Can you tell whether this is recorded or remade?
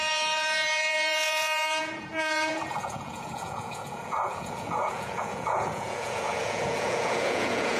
remade